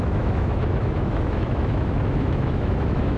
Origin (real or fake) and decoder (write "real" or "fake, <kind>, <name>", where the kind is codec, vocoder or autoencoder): fake, autoencoder, DAC-VAE